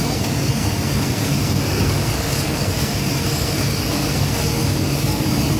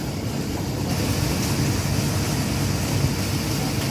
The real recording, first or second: second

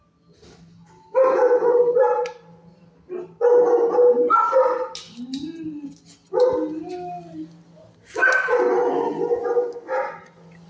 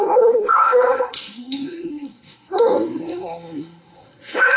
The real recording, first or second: first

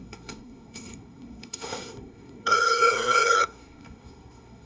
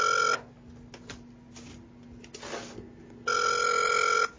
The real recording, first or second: second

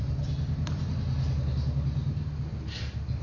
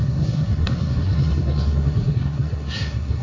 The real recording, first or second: first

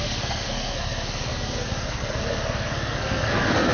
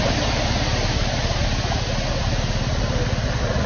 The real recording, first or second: second